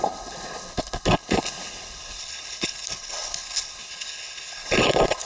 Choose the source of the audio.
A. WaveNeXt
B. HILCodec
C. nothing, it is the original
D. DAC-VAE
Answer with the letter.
B